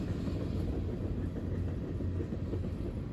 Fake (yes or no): no